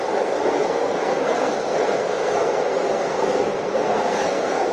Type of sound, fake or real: fake